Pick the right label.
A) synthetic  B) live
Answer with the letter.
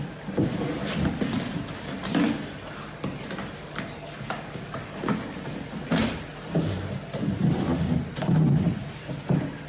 B